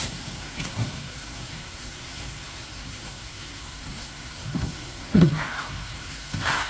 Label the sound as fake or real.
fake